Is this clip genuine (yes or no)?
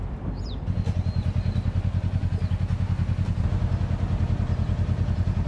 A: yes